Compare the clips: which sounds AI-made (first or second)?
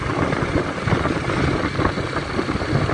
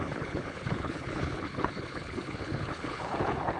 second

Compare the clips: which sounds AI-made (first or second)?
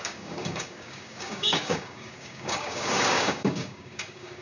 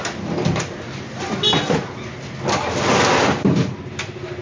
first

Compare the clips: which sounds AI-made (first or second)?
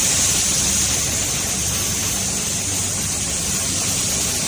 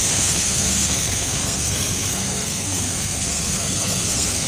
second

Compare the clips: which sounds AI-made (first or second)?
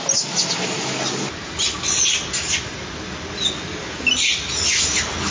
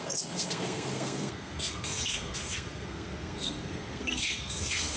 second